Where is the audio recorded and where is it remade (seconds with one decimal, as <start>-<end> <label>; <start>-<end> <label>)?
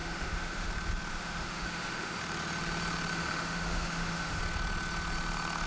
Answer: 0.0-0.7 remade; 0.7-1.1 recorded; 1.1-2.2 remade; 2.2-3.1 recorded; 3.1-4.4 remade; 4.4-5.7 recorded